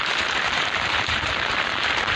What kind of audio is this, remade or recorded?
remade